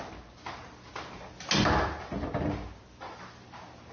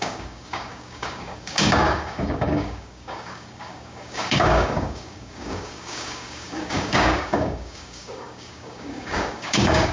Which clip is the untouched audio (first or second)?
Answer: first